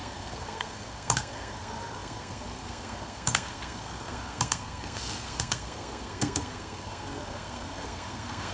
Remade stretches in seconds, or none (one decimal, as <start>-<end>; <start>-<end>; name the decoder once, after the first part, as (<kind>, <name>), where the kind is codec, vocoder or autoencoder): 0.0-8.5 (codec, SNAC)